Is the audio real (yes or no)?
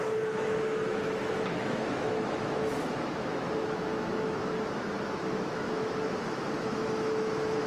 no